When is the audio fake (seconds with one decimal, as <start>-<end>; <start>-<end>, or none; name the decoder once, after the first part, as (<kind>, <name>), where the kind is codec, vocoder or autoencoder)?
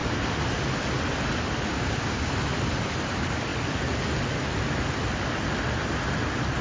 1.7-2.3 (codec, DAC)